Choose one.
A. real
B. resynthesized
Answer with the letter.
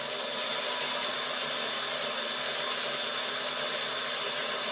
A